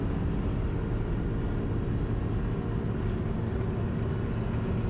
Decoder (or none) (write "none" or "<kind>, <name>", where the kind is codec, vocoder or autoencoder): none